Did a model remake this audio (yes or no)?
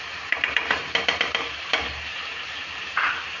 yes